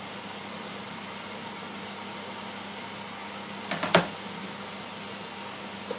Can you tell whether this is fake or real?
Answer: real